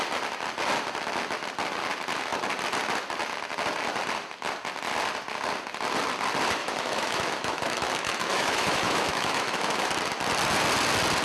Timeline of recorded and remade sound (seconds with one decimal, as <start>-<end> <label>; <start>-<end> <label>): 0.0-6.6 recorded; 6.6-9.9 remade; 9.9-11.2 recorded